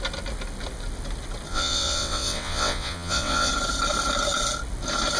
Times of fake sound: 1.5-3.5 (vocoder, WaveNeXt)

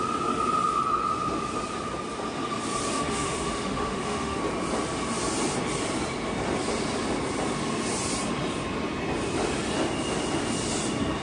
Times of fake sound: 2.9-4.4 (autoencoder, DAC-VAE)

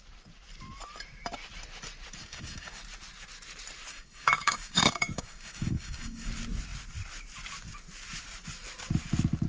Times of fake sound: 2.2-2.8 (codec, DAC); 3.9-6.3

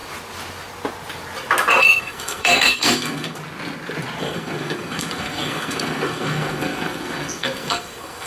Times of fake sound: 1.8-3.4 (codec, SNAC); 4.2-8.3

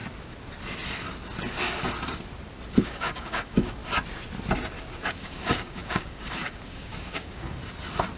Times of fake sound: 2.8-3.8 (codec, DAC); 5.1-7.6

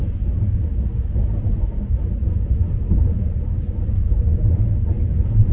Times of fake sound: 0.0-0.6 (vocoder, BigVGAN v2); 1.4-5.5

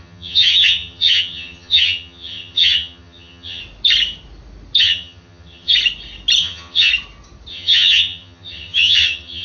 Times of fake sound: 0.0-3.6 (vocoder, HiFi-GAN); 4.8-5.7; 6.4-6.9; 7.5-9.4